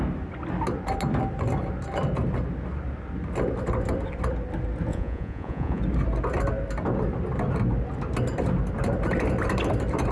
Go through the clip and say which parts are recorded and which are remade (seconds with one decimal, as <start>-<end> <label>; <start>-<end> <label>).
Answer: 0.0-4.9 recorded; 4.9-5.8 remade; 5.8-10.1 recorded